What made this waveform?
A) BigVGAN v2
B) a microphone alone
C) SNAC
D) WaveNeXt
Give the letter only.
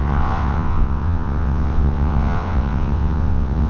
D